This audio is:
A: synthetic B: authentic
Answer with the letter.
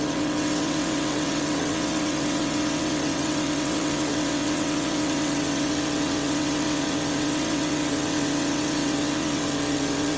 A